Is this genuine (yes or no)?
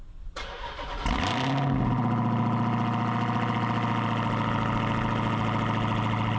yes